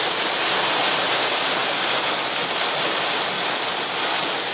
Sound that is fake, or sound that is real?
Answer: real